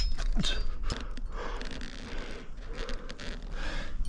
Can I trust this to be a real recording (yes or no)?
yes